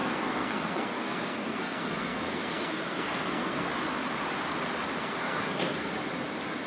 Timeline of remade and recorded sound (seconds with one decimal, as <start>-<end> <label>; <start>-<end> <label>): 0.0-3.7 remade; 3.7-5.0 recorded; 5.0-5.9 remade; 5.9-6.7 recorded